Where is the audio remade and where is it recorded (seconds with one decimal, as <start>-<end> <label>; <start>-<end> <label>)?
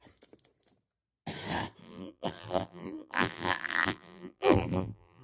0.0-1.8 recorded; 1.8-5.2 remade